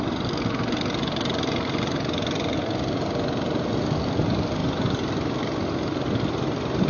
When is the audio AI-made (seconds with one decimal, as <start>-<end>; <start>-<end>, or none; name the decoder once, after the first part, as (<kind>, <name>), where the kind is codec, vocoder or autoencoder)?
none